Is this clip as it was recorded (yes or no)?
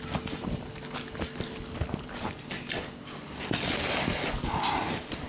yes